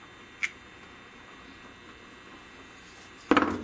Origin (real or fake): real